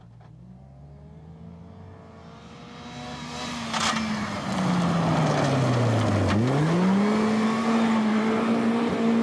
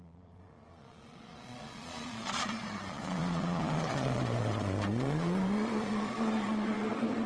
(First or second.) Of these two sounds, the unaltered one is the first